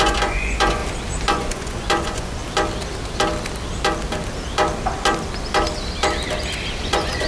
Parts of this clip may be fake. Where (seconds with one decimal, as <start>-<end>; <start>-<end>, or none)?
0.0-0.8; 1.3-2.4; 6.8-7.3